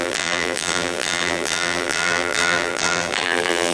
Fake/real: fake